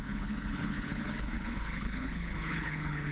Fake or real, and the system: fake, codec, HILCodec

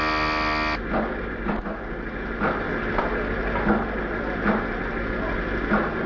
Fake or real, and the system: real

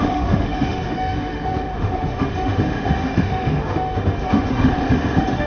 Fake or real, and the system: fake, autoencoder, DAC-VAE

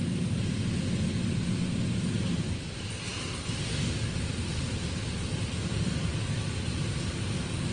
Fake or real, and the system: real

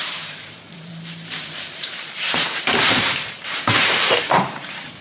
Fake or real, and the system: fake, vocoder, BigVGAN v2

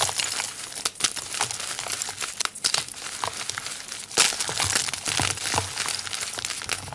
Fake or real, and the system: real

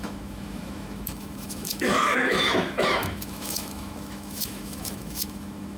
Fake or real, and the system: fake, autoencoder, DAC-VAE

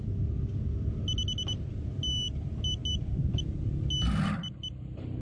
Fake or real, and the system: real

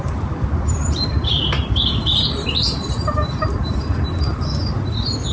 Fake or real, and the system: fake, vocoder, BigVGAN v2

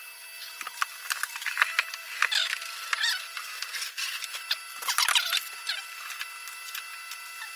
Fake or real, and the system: real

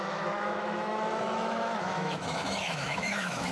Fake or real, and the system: fake, autoencoder, DAC-VAE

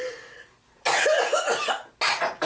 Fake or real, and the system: real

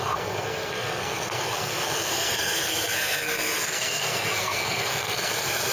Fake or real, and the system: fake, codec, SNAC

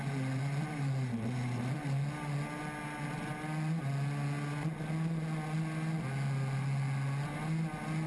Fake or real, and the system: real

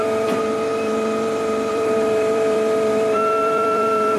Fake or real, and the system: fake, vocoder, BigVGAN v2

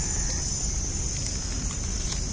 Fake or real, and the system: real